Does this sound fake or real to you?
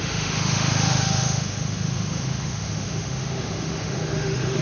fake